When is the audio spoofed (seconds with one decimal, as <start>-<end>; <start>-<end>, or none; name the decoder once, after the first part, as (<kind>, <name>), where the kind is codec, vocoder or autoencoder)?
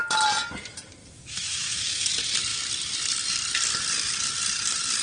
1.0-2.1 (autoencoder, DAC-VAE)